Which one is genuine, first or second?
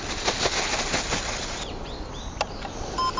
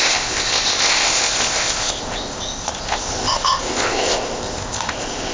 first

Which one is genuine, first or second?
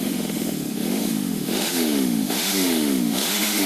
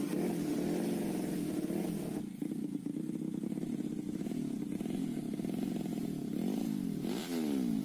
second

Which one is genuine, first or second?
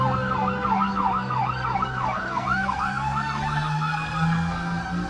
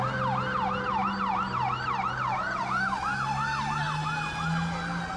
second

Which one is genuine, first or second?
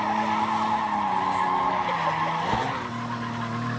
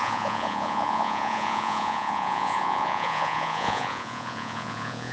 first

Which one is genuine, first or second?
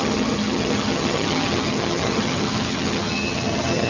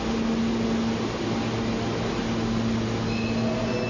second